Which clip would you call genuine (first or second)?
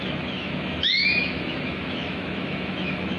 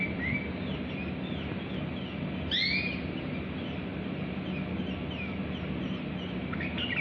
second